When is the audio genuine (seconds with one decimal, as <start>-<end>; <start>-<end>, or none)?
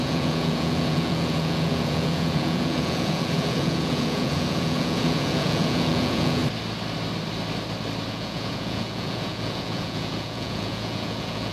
6.4-8.1